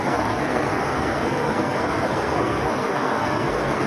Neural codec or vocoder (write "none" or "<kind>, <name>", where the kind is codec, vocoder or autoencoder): codec, SNAC